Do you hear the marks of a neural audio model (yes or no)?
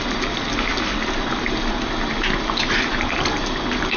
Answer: yes